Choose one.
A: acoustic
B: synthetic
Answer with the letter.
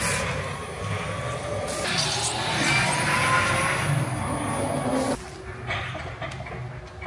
A